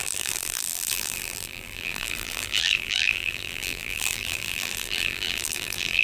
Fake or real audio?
fake